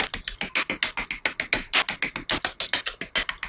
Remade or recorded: recorded